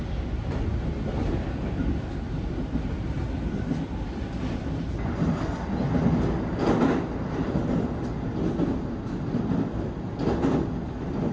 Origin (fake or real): real